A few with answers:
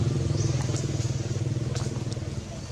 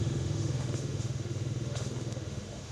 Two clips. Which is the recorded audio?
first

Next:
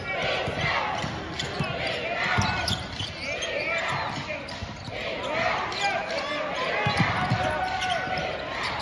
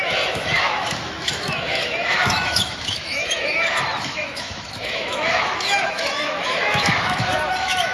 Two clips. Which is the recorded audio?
first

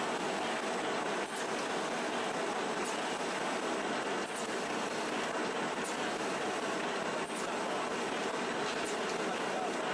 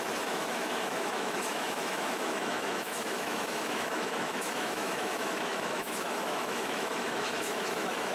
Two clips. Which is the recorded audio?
first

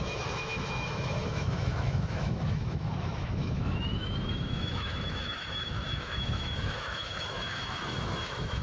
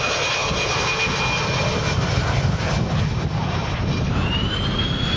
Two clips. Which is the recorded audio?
second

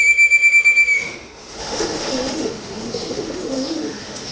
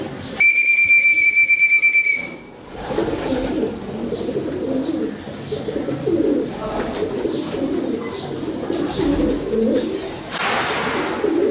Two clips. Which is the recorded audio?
second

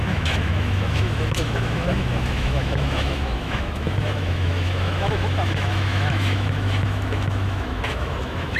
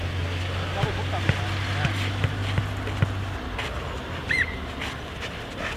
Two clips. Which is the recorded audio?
second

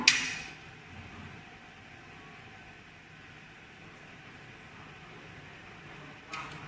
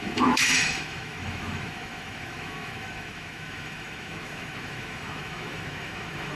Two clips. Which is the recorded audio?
first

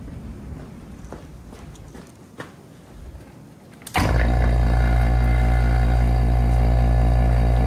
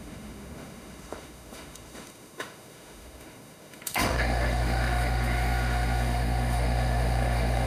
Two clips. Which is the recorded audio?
first